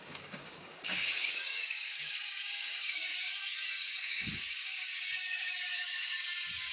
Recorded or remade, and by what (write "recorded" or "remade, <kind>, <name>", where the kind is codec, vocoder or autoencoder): remade, codec, DAC